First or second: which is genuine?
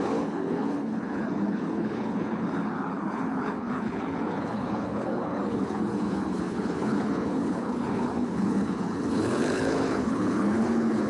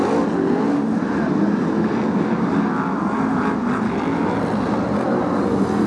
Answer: second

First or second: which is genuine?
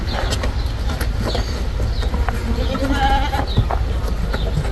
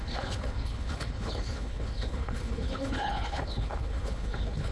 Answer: first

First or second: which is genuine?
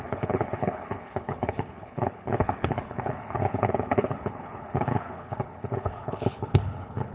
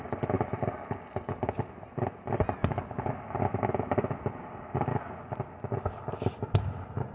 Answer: second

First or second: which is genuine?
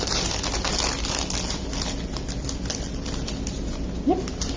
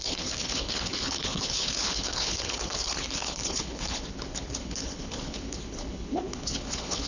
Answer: first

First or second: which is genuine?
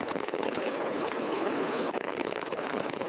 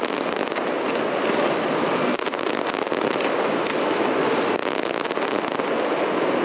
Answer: second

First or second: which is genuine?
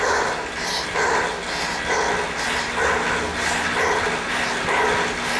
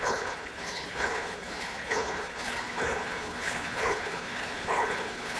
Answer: first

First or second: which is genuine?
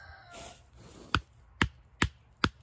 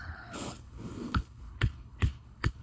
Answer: first